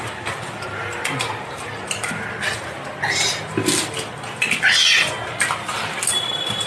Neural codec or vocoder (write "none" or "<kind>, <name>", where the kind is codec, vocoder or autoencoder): none